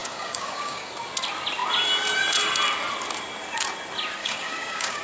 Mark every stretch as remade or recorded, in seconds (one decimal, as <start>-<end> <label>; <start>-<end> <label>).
0.0-0.9 remade; 0.9-4.2 recorded; 4.2-5.0 remade